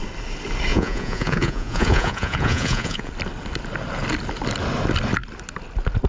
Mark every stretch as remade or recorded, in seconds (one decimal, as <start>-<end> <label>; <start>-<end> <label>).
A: 0.0-0.7 recorded; 0.7-3.1 remade; 3.1-6.1 recorded